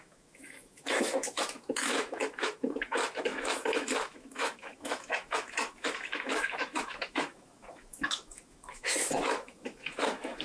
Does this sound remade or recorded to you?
remade